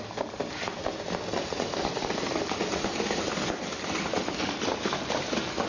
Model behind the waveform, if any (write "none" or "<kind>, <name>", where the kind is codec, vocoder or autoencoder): none